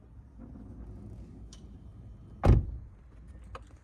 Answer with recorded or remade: recorded